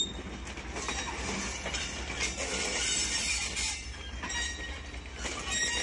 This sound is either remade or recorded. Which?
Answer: recorded